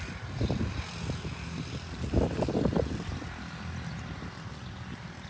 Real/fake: real